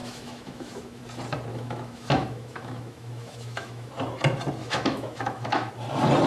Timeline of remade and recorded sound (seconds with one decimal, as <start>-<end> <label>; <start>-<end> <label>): 0.0-1.0 remade; 1.0-1.5 recorded; 1.5-3.9 remade; 3.9-4.6 recorded; 4.6-5.7 remade; 5.7-6.3 recorded